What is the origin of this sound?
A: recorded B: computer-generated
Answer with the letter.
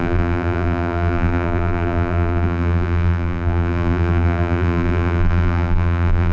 B